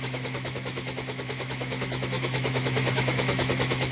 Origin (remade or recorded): remade